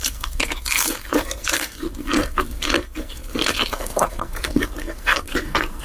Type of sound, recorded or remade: remade